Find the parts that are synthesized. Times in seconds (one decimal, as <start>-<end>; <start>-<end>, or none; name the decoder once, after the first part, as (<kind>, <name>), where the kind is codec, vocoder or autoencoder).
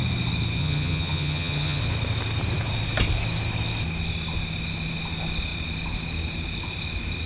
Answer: 0.6-1.8 (vocoder, HiFi-GAN)